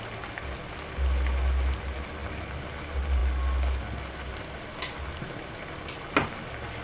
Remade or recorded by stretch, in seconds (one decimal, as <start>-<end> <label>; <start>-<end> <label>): 0.0-6.8 recorded